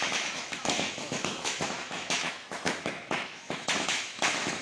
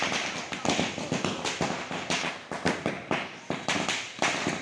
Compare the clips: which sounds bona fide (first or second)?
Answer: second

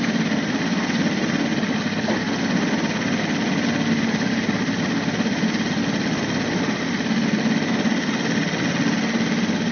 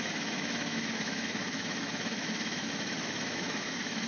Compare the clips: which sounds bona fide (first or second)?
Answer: first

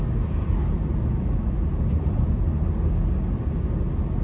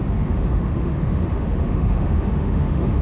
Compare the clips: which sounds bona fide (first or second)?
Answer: first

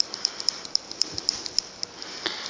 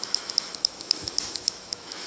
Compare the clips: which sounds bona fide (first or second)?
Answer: first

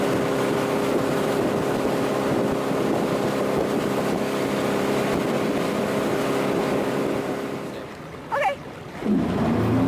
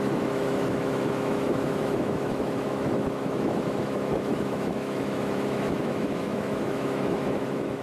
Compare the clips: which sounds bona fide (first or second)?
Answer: first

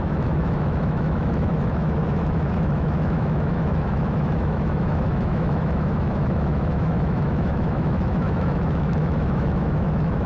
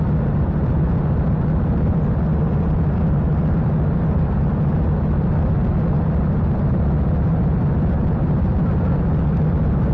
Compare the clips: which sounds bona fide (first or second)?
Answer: second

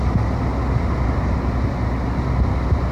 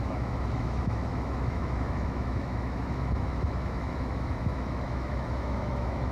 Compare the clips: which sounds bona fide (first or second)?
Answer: first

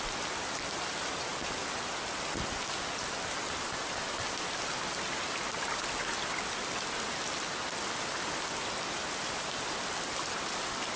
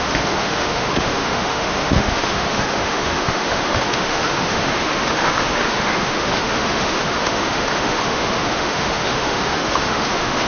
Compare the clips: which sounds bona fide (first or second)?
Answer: first